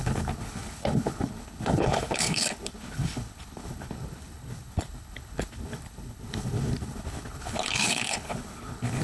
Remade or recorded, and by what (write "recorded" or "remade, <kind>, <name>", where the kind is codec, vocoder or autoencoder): remade, codec, HILCodec